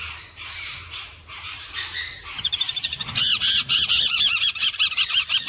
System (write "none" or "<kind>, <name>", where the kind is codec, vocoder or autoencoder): vocoder, BigVGAN v2